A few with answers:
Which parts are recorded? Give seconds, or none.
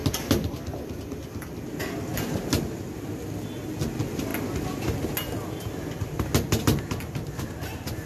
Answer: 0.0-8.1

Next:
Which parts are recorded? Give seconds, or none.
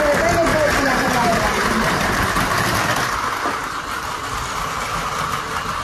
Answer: 0.0-0.5; 2.4-3.6; 4.2-5.8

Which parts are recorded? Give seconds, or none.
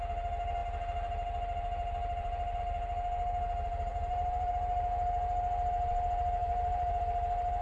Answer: 0.0-3.9; 4.5-6.4; 7.0-7.6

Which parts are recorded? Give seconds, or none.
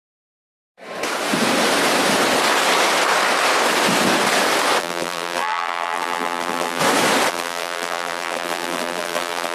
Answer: 0.0-4.8; 6.8-7.3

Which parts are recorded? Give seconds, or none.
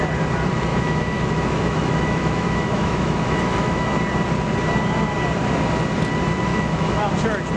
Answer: 0.0-0.7; 4.0-6.5; 7.1-7.6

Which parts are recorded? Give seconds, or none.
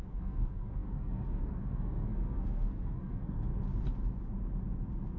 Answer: 3.5-5.2